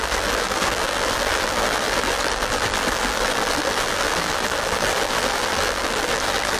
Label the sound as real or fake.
fake